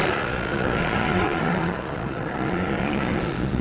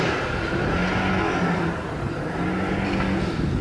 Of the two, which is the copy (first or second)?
first